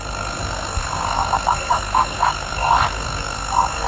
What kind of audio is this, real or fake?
fake